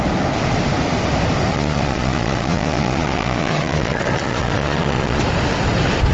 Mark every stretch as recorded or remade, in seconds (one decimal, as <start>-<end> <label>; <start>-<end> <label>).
0.0-1.5 recorded; 1.5-5.2 remade; 5.2-6.1 recorded